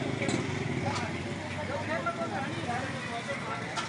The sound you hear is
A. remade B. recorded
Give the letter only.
B